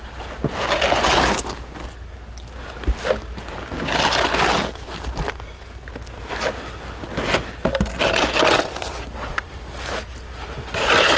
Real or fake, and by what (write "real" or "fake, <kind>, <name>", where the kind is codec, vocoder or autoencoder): real